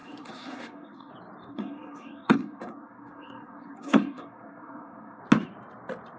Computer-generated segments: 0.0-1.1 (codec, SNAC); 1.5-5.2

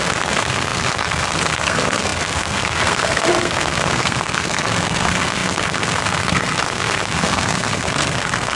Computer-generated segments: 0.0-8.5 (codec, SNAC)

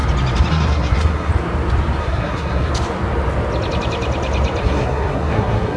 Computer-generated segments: 0.5-1.3 (codec, SNAC); 2.0-2.7; 4.6-5.8

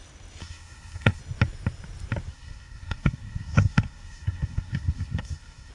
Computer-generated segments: 0.4-1.2 (codec, SNAC); 2.3-5.7